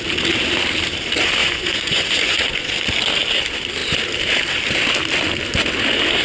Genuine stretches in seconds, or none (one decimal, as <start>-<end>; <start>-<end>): 0.0-1.4; 2.7-6.2